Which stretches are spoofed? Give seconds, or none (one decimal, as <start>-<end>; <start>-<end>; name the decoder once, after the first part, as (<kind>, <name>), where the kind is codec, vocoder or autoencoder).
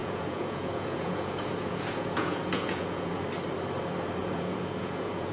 0.0-3.2 (vocoder, Vocos); 4.2-5.3